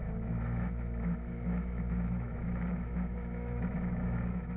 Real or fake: fake